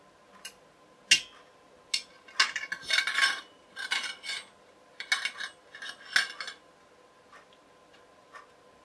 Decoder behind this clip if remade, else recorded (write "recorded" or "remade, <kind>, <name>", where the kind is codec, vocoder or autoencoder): recorded